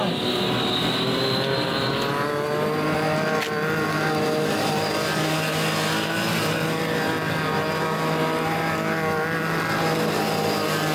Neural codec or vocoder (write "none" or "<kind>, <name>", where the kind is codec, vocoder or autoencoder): none